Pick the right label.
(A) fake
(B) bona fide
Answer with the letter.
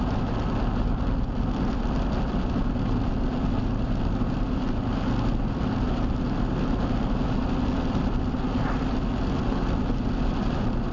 B